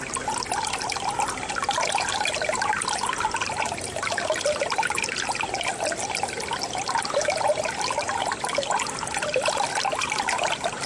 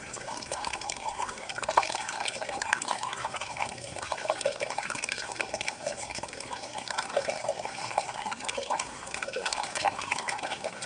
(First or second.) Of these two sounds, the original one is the first